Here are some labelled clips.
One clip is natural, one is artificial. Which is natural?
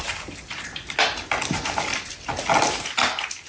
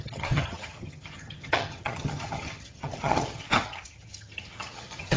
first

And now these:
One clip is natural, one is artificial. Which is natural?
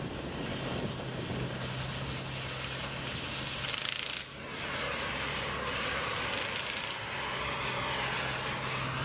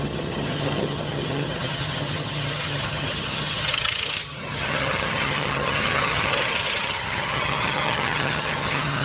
first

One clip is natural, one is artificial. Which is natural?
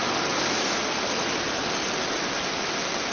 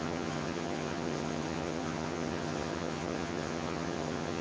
first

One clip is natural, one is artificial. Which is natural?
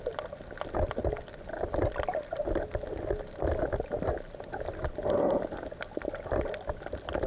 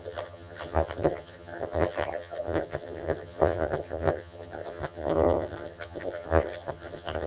first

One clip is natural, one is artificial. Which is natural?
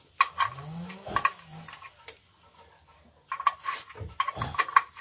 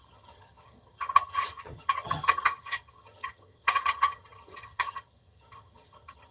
first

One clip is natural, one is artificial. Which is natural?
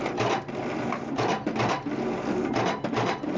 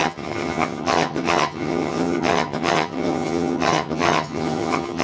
first